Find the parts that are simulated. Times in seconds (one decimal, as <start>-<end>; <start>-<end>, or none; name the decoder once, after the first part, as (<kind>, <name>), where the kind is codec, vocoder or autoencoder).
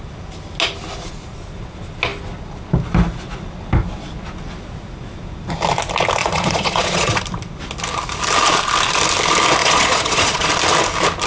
6.2-7.2 (vocoder, Vocos); 9.6-10.5